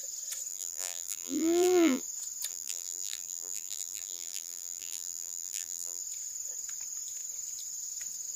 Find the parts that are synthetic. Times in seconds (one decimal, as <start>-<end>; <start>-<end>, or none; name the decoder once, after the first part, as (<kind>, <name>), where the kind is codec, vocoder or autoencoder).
0.5-2.0 (vocoder, BigVGAN v2); 2.5-6.0